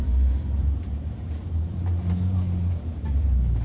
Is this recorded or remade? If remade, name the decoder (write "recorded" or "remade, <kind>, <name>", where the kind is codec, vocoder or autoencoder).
remade, vocoder, BigVGAN v2